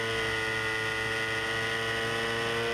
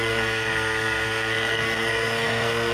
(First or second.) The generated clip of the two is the second